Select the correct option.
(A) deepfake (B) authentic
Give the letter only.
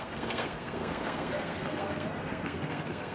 A